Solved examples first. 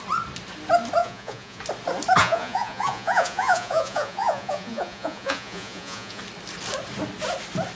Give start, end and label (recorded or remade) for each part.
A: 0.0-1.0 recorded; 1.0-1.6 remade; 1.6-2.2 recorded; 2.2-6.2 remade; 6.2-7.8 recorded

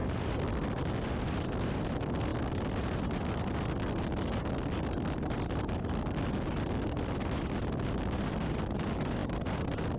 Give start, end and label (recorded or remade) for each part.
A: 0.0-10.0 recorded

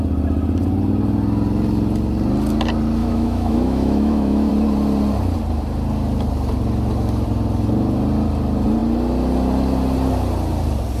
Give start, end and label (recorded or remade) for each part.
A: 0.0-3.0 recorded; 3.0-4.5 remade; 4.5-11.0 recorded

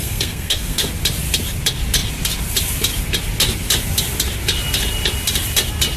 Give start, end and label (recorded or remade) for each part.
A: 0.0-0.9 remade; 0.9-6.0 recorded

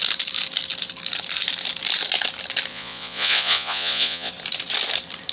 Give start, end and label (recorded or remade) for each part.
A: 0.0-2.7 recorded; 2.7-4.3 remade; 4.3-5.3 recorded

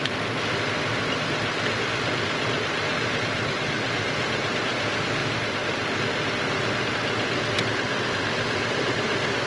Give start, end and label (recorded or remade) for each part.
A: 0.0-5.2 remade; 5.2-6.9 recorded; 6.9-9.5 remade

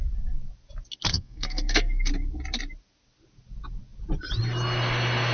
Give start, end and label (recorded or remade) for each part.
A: 0.0-1.1 recorded; 1.1-2.1 remade; 2.1-5.3 recorded